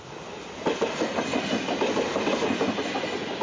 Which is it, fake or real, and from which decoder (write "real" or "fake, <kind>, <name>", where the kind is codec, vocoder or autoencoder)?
real